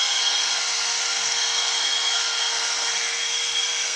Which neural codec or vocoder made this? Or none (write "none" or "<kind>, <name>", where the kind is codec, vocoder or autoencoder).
codec, SNAC